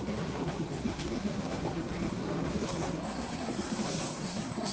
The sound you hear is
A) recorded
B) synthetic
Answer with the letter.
B